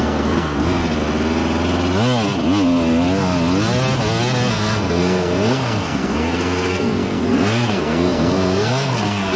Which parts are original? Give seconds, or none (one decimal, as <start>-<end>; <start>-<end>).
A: 0.8-4.5